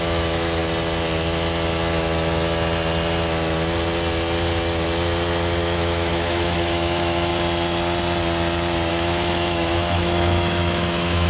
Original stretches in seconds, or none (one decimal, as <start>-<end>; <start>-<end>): 0.6-5.6; 7.3-8.9